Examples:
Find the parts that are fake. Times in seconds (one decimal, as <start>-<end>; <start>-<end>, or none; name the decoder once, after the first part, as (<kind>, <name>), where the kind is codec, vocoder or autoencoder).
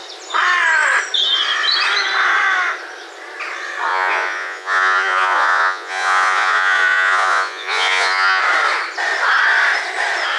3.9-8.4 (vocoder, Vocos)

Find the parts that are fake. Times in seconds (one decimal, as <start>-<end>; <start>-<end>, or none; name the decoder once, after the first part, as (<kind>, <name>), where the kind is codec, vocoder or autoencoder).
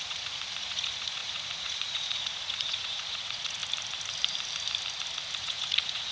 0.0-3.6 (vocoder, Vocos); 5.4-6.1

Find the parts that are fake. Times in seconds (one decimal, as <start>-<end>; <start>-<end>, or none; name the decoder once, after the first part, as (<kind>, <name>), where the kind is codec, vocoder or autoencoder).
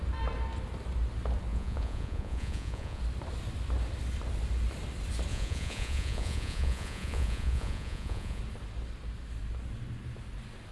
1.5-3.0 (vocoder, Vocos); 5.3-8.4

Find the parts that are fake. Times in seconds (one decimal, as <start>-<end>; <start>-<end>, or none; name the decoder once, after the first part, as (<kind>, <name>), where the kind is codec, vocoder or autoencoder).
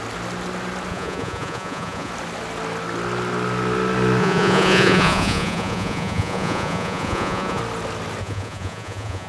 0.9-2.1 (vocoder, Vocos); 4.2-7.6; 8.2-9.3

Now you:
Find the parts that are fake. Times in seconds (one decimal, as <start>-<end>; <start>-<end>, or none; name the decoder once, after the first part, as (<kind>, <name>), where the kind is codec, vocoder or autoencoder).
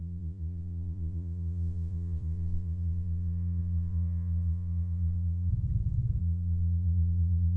0.0-5.5 (vocoder, Vocos); 6.2-7.6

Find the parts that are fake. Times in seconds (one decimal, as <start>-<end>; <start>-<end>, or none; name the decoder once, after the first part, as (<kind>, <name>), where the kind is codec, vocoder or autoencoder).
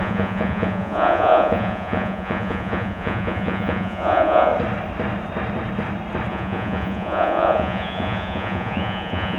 0.0-4.5 (vocoder, Vocos); 6.3-9.4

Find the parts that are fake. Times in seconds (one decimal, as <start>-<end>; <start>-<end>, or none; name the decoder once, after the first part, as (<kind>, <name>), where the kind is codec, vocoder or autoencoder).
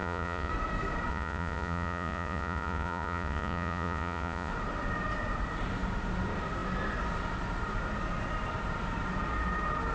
0.0-0.5 (vocoder, Vocos); 1.1-4.5